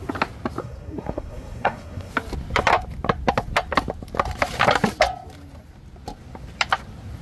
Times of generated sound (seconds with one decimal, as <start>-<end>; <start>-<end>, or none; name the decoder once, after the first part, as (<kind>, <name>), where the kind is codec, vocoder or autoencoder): 0.6-2.1 (codec, SNAC)